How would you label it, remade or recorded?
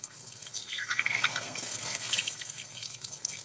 remade